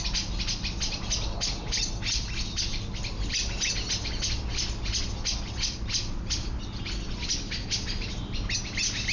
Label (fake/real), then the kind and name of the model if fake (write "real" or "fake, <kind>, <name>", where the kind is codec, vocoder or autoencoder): real